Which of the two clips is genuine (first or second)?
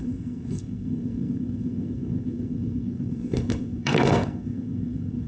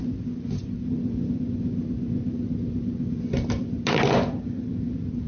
second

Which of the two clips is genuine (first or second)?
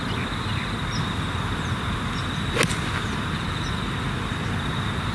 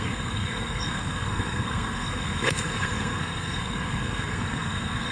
first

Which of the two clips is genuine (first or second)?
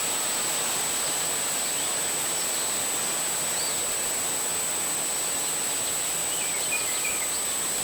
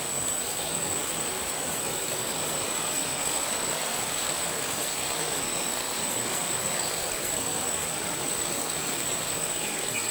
first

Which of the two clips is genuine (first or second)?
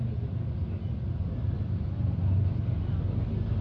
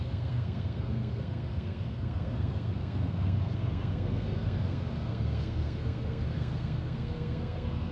first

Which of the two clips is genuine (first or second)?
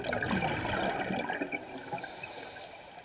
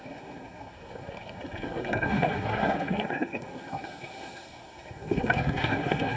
first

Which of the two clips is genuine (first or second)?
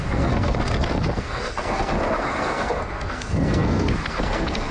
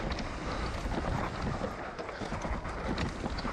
second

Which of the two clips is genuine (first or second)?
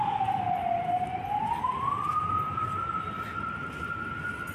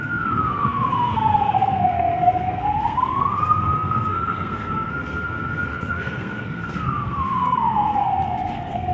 first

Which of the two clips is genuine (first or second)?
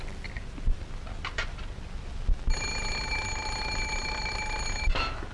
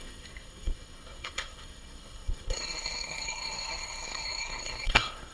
first